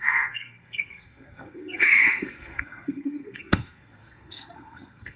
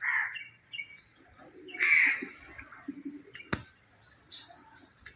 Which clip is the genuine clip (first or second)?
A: second